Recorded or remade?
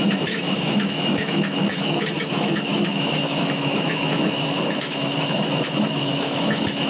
remade